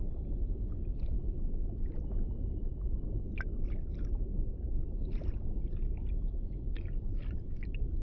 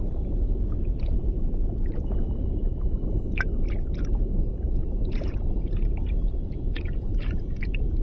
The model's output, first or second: second